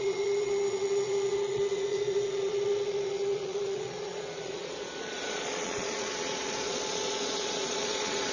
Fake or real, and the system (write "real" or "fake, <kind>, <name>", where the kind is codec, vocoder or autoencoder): fake, vocoder, Vocos